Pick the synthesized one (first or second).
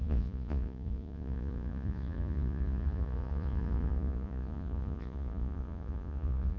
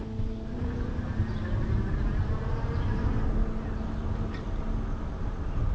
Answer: first